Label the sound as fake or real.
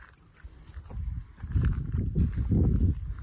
real